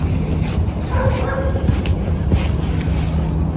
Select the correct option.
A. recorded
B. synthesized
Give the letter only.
A